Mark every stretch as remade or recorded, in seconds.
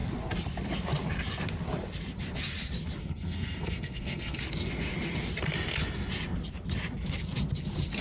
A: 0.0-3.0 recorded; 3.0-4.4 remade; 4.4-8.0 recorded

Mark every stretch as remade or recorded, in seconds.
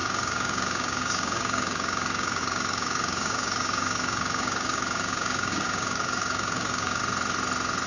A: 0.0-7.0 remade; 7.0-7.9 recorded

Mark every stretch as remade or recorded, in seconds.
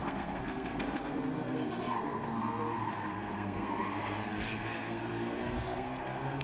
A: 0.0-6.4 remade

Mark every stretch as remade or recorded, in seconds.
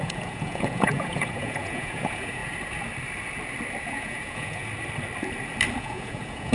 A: 0.0-2.4 remade; 2.4-3.8 recorded; 3.8-4.6 remade; 4.6-5.8 recorded; 5.8-6.5 remade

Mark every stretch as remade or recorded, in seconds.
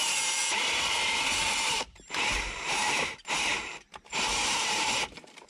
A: 0.0-5.5 remade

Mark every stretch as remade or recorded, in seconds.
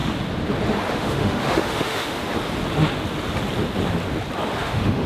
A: 0.0-0.9 recorded; 0.9-2.2 remade; 2.2-4.6 recorded; 4.6-5.1 remade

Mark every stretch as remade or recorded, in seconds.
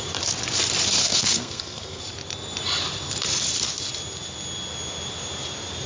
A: 0.0-1.0 recorded; 1.0-2.0 remade; 2.0-5.9 recorded